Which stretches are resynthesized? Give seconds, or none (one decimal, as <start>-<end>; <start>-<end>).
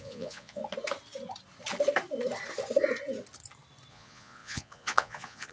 0.0-0.6; 3.9-5.5